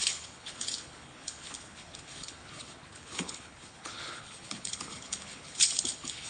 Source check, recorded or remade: remade